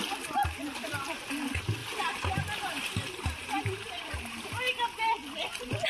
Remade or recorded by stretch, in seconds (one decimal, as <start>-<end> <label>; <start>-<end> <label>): 0.0-1.8 recorded; 1.8-4.5 remade; 4.5-5.9 recorded